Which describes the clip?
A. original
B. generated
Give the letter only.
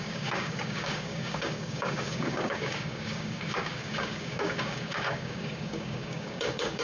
B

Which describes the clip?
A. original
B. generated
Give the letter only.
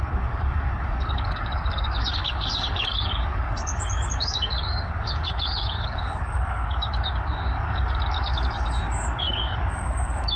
B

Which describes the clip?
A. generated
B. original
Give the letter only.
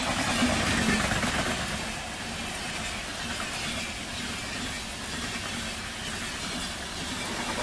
B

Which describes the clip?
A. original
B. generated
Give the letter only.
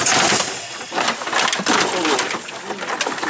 A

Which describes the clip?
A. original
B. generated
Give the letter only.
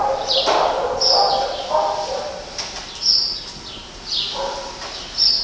A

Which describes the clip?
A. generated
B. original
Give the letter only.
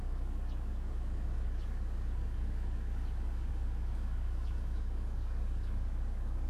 A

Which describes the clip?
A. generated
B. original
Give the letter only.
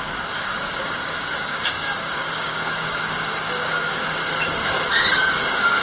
A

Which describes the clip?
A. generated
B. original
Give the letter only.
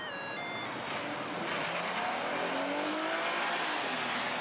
B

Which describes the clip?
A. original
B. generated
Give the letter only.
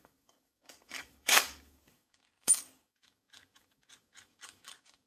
B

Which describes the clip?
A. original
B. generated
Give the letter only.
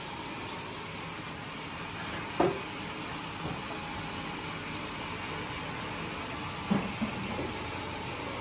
A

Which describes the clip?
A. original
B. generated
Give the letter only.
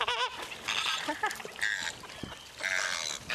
A